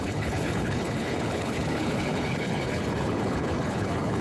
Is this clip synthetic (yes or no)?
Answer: yes